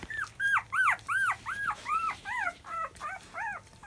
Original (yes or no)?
yes